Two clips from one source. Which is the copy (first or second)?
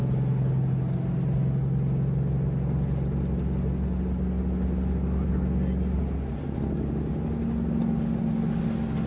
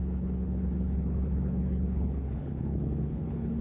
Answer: second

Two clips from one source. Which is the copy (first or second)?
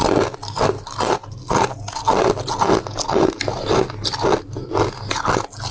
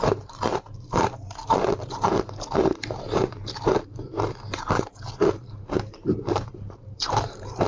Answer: second